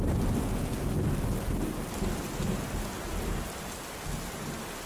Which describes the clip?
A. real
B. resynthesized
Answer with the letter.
A